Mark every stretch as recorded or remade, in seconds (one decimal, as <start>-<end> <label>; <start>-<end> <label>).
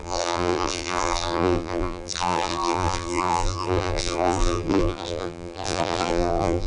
0.0-6.7 remade